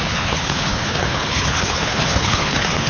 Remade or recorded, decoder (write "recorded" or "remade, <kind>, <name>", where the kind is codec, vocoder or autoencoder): remade, codec, HILCodec